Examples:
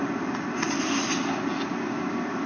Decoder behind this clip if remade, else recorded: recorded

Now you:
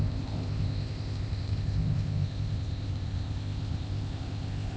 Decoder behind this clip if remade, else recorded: remade, codec, ZipCodec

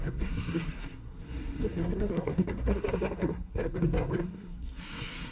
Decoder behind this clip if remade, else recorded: remade, codec, SNAC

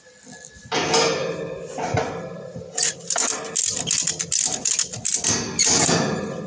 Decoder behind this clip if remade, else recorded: recorded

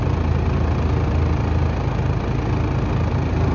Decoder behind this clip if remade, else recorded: recorded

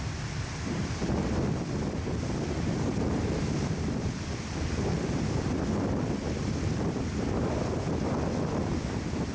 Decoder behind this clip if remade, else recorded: recorded